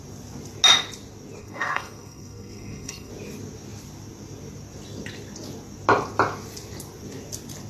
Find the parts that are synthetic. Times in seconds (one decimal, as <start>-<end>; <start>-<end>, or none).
1.4-3.1